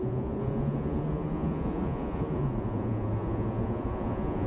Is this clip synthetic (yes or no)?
yes